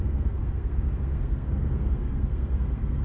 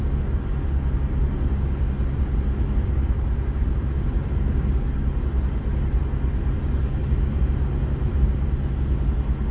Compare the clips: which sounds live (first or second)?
second